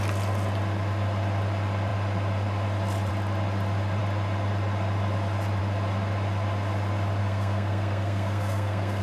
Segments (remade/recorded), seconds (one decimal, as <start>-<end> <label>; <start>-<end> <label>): 0.0-7.2 recorded; 7.2-9.0 remade